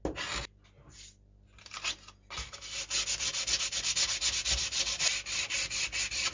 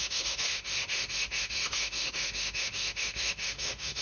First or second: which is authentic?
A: first